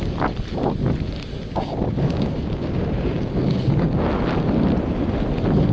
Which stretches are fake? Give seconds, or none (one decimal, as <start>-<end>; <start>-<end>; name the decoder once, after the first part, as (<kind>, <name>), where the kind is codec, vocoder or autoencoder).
1.5-4.1 (codec, DAC)